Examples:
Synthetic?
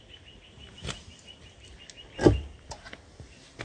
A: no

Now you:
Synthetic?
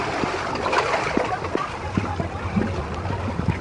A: no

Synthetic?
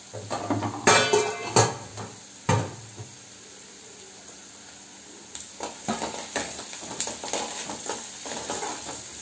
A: no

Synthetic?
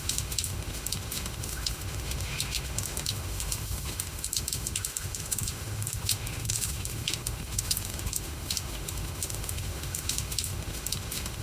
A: yes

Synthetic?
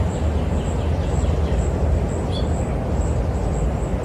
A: no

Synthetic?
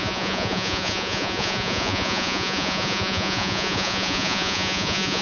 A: yes